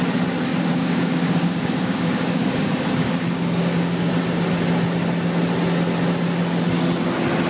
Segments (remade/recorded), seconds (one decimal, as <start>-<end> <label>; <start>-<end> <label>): 0.0-0.5 recorded; 0.5-4.1 remade; 4.1-7.5 recorded